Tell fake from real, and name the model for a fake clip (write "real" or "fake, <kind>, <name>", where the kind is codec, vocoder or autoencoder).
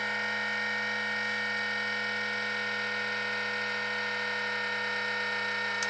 real